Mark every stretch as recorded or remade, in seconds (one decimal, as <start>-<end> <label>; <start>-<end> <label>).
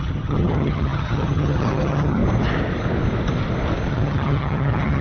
0.0-2.2 remade; 2.2-3.9 recorded; 3.9-5.0 remade